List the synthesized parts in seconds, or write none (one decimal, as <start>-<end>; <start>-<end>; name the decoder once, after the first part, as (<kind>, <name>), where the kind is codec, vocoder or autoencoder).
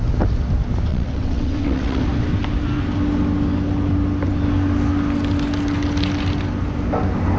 0.9-2.0 (vocoder, WaveNeXt)